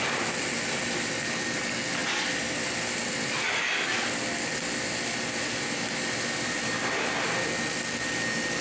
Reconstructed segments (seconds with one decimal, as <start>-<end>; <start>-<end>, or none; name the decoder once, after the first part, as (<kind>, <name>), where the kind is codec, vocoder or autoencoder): none